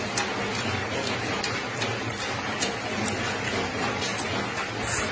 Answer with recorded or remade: recorded